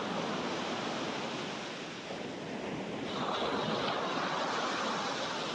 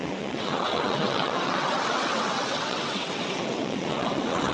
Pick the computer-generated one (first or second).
second